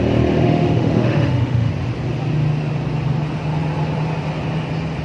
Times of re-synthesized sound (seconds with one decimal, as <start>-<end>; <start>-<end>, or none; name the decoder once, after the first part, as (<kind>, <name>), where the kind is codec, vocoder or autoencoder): 0.4-1.7 (autoencoder, DAC-VAE)